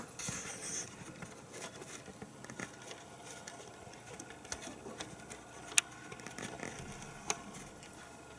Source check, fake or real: real